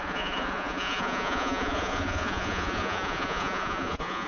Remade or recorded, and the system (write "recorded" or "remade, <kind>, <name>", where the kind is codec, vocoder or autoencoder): remade, vocoder, Vocos